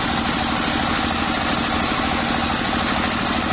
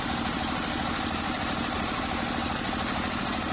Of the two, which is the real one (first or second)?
first